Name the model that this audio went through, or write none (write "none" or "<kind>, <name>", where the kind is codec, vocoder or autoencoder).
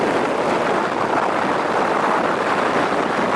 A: none